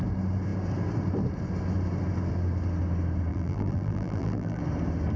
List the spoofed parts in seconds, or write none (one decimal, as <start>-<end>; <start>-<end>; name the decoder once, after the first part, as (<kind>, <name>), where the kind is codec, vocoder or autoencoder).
3.3-4.6 (vocoder, BigVGAN v2)